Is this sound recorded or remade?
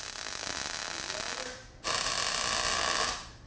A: recorded